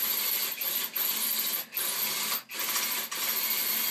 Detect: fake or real real